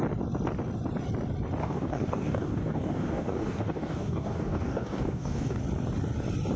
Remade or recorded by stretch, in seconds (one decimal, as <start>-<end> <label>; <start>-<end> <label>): 0.0-1.6 recorded; 1.6-5.6 remade; 5.6-6.6 recorded